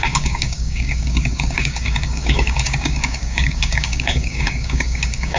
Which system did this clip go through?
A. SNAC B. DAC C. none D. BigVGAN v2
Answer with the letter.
B